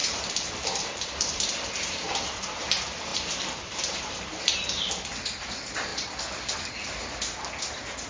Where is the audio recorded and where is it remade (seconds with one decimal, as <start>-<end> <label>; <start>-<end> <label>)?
0.0-2.6 remade; 2.6-3.1 recorded; 3.1-4.2 remade; 4.2-8.1 recorded